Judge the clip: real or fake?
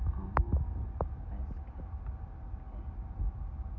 real